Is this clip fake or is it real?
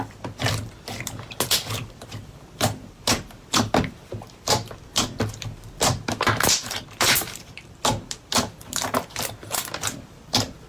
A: fake